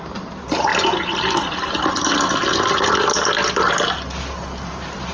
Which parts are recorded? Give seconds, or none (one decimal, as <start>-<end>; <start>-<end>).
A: 0.0-5.1